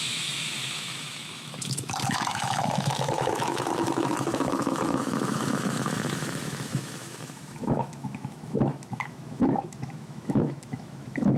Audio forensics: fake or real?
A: fake